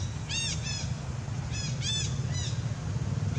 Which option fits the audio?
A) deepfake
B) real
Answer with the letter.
B